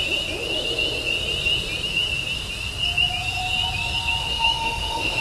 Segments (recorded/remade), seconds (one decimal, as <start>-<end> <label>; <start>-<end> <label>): 0.0-4.2 recorded; 4.2-5.2 remade

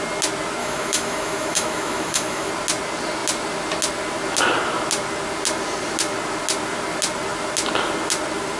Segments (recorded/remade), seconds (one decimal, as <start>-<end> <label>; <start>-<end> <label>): 0.0-0.6 recorded; 0.6-2.5 remade; 2.5-8.6 recorded